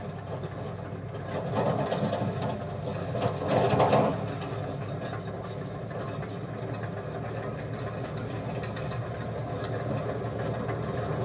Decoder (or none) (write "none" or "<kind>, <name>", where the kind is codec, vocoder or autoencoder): none